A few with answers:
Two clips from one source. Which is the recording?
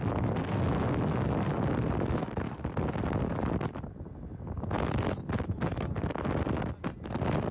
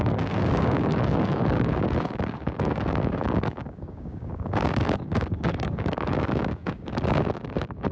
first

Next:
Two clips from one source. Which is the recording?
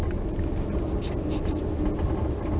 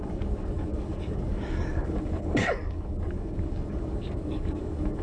first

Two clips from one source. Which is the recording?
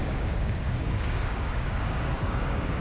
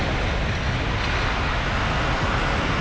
second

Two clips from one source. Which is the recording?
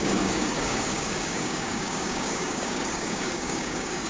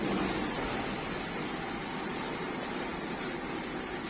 second